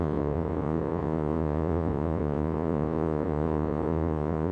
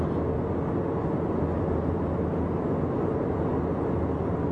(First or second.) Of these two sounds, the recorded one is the second